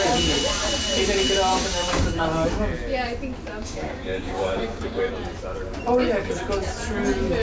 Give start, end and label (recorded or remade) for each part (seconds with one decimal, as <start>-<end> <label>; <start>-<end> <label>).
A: 0.0-1.5 recorded; 1.5-2.2 remade; 2.2-3.6 recorded; 3.6-5.1 remade; 5.1-7.4 recorded